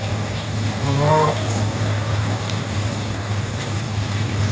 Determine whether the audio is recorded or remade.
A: remade